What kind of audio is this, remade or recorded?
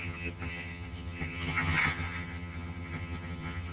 remade